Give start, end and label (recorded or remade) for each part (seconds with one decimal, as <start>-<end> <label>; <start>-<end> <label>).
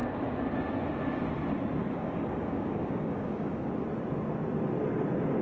0.0-1.8 recorded; 1.8-3.7 remade; 3.7-5.4 recorded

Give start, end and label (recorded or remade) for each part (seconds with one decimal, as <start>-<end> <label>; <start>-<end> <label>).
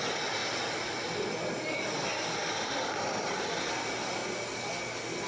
0.0-5.3 recorded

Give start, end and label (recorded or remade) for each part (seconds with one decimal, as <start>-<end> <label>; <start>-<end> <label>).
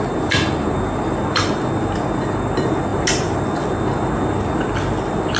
0.0-5.4 recorded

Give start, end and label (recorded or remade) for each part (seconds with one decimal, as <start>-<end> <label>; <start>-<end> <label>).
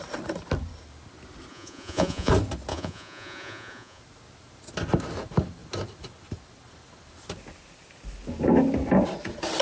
0.0-1.5 recorded; 1.5-2.3 remade; 2.3-2.7 recorded; 2.7-4.0 remade; 4.0-9.6 recorded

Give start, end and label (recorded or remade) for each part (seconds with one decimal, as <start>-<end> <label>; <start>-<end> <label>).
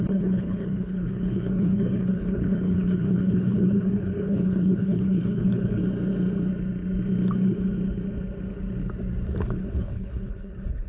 0.0-5.8 remade; 5.8-9.4 recorded; 9.4-10.9 remade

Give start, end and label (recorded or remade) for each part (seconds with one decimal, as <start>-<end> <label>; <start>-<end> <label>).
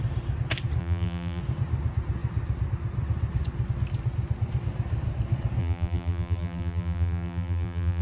0.0-0.8 recorded; 0.8-1.4 remade; 1.4-5.6 recorded; 5.6-8.0 remade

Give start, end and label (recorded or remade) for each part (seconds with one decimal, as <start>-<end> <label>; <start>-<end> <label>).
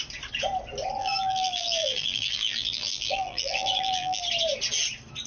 0.0-1.0 recorded; 1.0-4.2 remade; 4.2-5.3 recorded